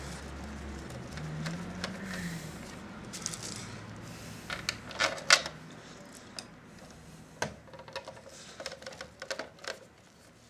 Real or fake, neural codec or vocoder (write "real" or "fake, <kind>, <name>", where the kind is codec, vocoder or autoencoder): real